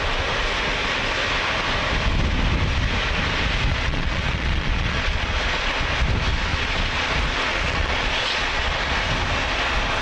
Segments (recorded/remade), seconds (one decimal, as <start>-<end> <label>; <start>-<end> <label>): 0.0-3.7 recorded; 3.7-5.7 remade; 5.7-6.5 recorded; 6.5-7.1 remade; 7.1-7.5 recorded; 7.5-8.8 remade; 8.8-10.0 recorded